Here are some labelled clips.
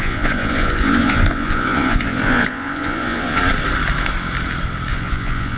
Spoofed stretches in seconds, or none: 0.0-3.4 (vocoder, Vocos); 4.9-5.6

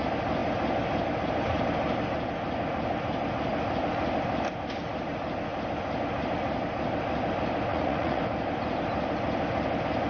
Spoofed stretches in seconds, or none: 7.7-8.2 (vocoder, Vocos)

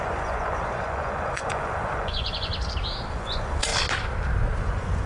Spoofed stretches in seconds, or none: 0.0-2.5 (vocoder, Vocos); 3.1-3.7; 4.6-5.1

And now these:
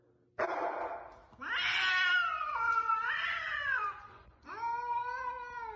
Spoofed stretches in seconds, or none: 2.3-4.5 (vocoder, Vocos)

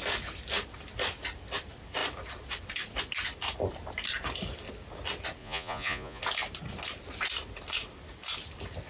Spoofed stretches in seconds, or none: 5.4-6.2 (vocoder, Vocos)

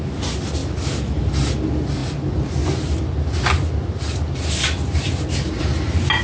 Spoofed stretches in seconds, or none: none

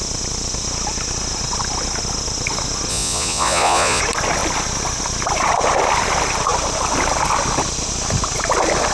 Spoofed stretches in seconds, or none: 2.9-4.0 (vocoder, Vocos)